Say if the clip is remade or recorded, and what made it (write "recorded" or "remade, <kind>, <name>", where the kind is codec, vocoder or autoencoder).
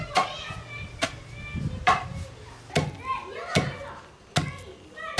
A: recorded